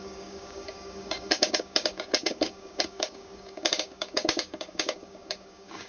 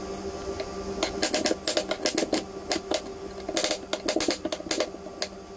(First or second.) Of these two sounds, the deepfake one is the first